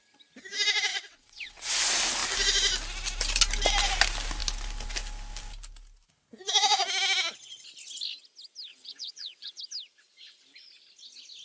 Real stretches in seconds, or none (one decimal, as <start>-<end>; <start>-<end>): 0.0-0.9; 1.7-8.7; 9.6-11.4